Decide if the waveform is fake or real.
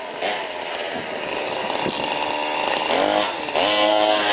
real